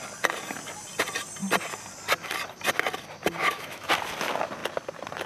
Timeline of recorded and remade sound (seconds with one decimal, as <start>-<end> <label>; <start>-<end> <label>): 0.0-3.4 recorded; 3.4-3.9 remade; 3.9-5.3 recorded